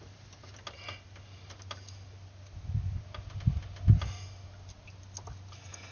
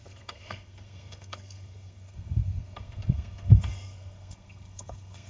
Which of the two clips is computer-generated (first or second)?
second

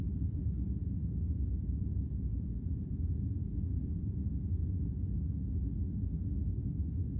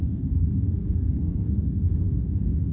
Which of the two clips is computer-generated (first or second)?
second